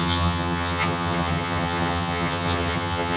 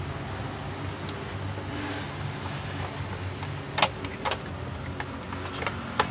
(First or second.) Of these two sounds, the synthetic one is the first